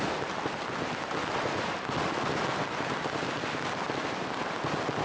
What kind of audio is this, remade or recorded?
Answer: recorded